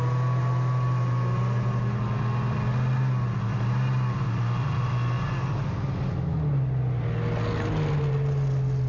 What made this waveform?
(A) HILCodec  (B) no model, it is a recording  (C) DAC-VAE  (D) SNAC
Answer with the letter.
B